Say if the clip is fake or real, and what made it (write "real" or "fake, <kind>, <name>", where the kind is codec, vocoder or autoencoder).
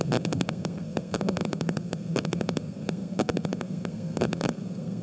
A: fake, codec, SNAC